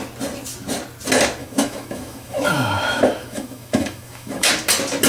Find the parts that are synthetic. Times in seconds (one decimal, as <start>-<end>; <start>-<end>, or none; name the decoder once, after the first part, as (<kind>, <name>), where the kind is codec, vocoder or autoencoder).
1.4-4.5 (autoencoder, DAC-VAE)